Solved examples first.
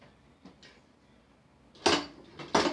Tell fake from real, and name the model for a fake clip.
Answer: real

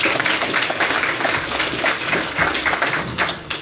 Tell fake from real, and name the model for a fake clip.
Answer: fake, codec, DAC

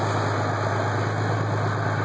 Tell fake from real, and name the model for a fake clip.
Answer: real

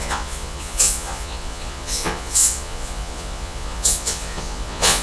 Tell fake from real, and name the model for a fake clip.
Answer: fake, vocoder, Vocos